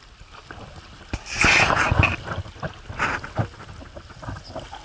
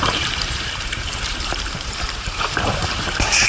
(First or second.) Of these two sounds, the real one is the first